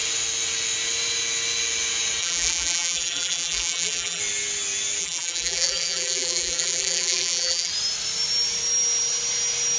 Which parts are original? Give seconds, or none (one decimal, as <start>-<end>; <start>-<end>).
0.0-2.2; 4.2-5.0; 7.7-9.8